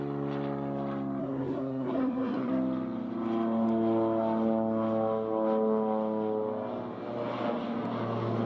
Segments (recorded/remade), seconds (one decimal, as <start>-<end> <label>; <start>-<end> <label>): 0.0-1.2 recorded; 1.2-2.5 remade; 2.5-8.5 recorded